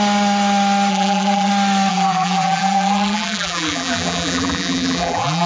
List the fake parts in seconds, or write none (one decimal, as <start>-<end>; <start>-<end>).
0.9-1.5; 1.9-5.5